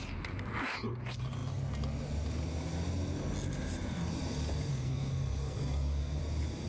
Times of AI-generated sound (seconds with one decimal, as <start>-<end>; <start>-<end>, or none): 4.7-6.2